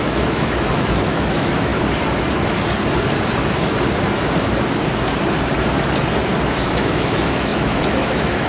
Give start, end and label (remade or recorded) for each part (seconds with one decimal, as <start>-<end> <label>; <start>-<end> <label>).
0.0-1.7 remade; 1.7-6.5 recorded; 6.5-8.5 remade